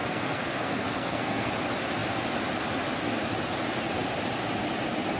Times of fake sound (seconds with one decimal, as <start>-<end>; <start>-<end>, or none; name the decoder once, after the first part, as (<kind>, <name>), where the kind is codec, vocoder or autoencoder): 0.0-1.5 (codec, SNAC)